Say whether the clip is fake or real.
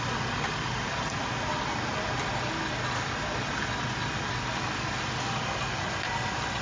real